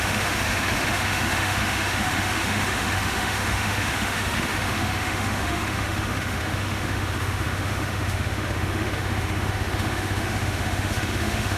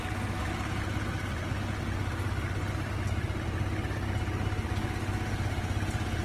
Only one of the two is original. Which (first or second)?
second